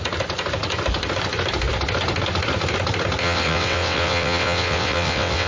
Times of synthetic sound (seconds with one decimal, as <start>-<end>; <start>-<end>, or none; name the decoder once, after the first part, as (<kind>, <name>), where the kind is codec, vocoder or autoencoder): 3.2-5.5 (vocoder, WaveNeXt)